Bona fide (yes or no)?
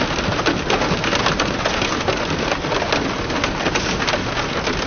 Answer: yes